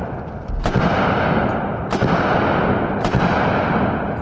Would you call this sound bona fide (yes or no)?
yes